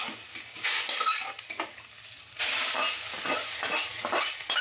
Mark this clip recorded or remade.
recorded